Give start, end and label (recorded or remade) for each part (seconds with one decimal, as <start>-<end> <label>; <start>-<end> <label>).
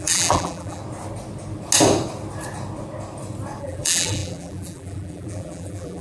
0.0-0.8 remade; 0.8-3.6 recorded; 3.6-6.0 remade